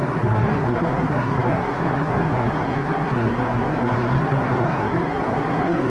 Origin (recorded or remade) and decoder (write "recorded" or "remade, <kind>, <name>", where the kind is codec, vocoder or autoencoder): remade, codec, SNAC